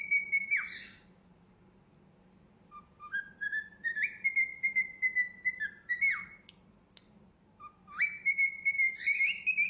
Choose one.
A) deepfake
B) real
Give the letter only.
B